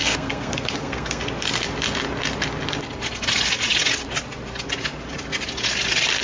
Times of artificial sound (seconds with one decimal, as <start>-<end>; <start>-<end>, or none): 0.0-1.2